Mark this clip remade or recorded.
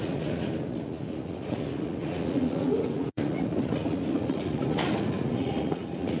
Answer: remade